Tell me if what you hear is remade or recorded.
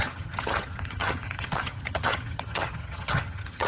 remade